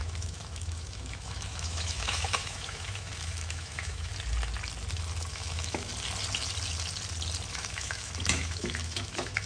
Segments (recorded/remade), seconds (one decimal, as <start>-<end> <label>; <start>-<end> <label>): 0.0-4.1 remade; 4.1-5.3 recorded; 5.3-5.9 remade; 5.9-7.5 recorded; 7.5-9.5 remade

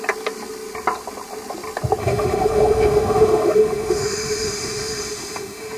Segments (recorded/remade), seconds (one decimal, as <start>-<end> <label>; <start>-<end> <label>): 0.0-2.0 recorded; 2.0-5.8 remade

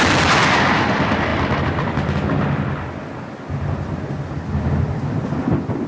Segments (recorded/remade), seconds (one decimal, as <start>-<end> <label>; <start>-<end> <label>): 0.0-5.9 recorded

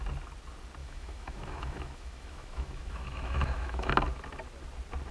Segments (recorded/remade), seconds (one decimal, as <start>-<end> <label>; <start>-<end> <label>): 0.0-0.8 recorded; 0.8-3.9 remade; 3.9-5.1 recorded

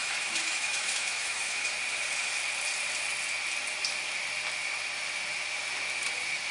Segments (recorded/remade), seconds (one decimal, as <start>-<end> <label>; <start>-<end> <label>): 0.0-1.7 remade; 1.7-6.5 recorded